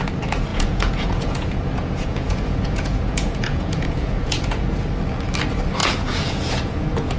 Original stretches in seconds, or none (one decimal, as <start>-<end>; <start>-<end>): 0.0-0.5; 4.8-5.8